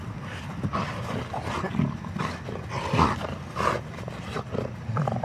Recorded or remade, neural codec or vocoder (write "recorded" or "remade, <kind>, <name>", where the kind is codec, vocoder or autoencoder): recorded